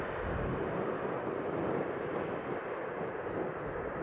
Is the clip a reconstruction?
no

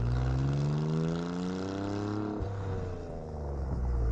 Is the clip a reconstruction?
no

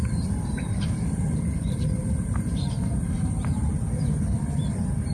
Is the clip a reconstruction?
yes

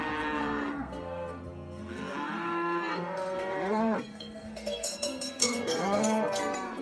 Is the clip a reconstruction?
yes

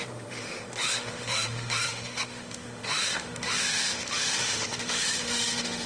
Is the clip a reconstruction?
yes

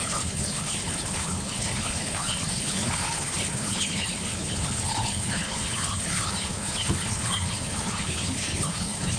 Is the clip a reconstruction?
yes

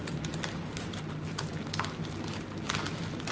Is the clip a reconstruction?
no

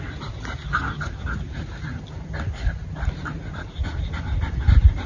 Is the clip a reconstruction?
no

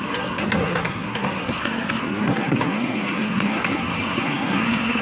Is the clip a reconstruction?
yes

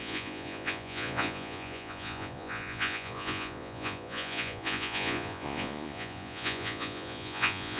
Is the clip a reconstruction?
yes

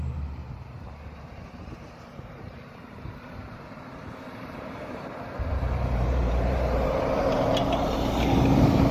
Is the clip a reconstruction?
yes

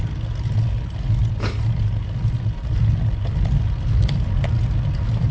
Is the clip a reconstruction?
no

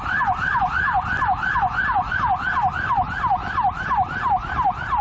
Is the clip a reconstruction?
no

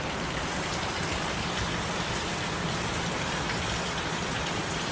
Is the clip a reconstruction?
no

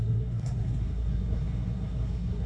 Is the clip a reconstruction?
yes